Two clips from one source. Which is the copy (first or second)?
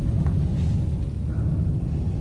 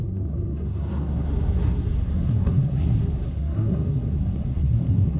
second